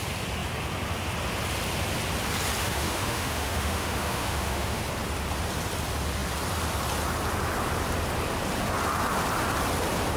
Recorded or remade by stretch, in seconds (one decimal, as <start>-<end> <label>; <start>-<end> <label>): 0.0-2.6 recorded; 2.6-4.8 remade; 4.8-10.2 recorded